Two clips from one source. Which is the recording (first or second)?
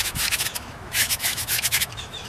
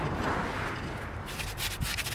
second